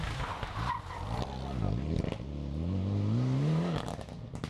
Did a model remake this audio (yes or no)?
no